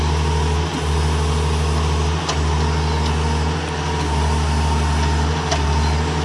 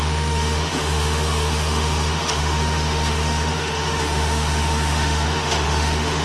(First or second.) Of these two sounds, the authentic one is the first